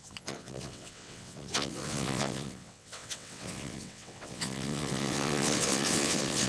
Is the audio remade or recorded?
remade